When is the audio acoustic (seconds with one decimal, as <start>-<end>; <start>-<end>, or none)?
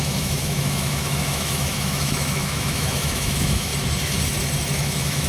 3.7-4.8